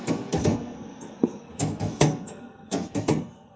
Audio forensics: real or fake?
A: fake